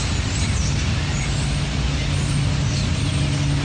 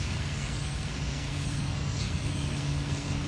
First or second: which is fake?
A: second